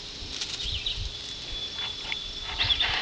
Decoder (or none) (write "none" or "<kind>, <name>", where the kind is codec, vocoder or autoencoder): none